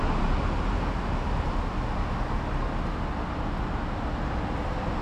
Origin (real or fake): real